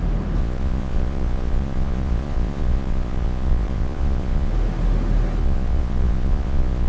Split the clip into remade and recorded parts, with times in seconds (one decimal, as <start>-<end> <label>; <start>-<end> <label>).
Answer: 0.0-0.4 recorded; 0.4-4.5 remade; 4.5-5.4 recorded; 5.4-6.9 remade